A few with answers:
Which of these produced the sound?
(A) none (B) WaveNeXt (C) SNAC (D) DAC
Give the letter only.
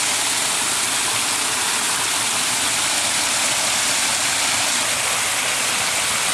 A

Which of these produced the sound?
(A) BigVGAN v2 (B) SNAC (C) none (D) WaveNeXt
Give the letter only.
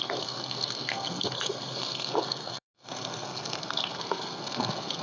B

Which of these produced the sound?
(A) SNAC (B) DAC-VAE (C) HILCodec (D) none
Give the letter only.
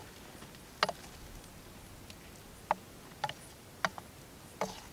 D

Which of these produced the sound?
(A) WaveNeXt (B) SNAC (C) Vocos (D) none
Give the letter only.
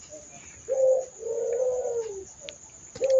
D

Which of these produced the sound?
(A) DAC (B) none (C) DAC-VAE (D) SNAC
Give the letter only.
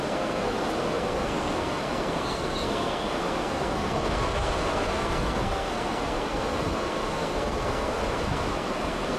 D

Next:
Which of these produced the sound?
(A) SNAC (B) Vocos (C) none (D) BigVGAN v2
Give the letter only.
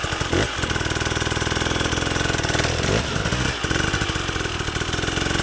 C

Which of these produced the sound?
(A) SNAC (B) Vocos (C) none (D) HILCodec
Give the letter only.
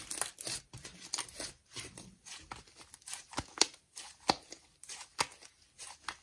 C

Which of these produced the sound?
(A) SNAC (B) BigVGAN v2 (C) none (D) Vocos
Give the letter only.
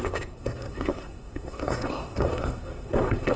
A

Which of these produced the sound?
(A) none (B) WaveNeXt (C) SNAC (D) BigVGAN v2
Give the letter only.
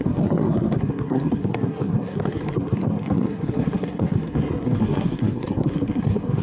C